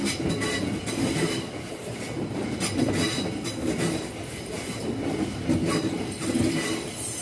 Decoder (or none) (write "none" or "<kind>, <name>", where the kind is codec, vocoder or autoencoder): none